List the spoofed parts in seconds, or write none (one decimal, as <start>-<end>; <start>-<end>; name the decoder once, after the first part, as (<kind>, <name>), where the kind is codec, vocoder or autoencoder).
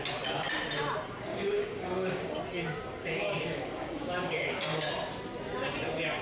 1.3-2.4 (codec, DAC); 3.0-4.9